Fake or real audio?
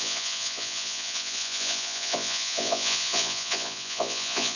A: fake